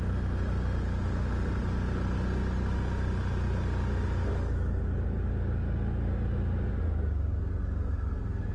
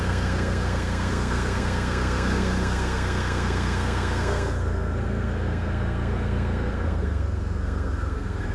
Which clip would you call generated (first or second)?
second